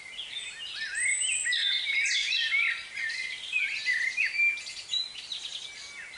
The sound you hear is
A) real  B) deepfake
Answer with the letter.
A